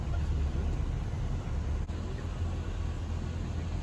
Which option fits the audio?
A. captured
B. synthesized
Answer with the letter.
A